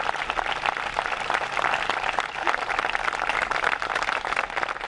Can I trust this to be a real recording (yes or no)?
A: yes